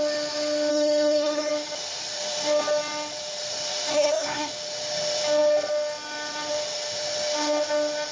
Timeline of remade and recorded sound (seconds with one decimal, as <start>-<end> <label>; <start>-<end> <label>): 0.0-0.7 recorded; 0.7-1.5 remade; 1.5-3.9 recorded; 3.9-4.5 remade; 4.5-8.1 recorded